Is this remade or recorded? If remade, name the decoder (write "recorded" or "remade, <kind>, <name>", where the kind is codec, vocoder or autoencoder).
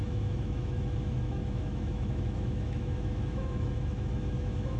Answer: remade, autoencoder, DAC-VAE